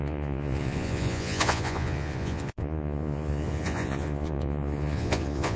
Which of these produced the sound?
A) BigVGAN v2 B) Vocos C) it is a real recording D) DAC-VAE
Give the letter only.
B